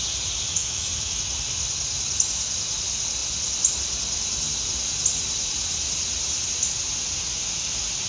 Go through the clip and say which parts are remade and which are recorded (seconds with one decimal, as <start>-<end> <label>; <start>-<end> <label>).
0.0-0.5 recorded; 0.5-1.2 remade; 1.2-8.1 recorded